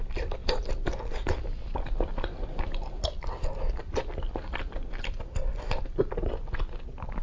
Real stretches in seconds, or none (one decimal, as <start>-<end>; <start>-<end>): 0.0-7.2